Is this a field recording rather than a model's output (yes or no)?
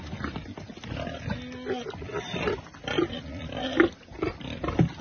yes